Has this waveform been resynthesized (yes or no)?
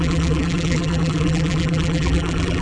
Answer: yes